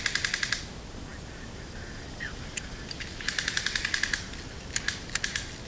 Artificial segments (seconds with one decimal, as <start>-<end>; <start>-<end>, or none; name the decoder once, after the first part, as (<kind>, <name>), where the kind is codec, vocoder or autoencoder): none